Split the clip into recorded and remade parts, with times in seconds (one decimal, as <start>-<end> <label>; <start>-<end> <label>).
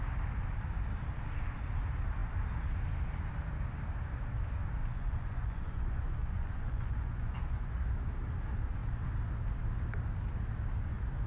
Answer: 0.0-4.8 recorded; 4.8-7.7 remade; 7.7-11.3 recorded